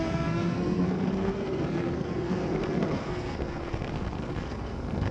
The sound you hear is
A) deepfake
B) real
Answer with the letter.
A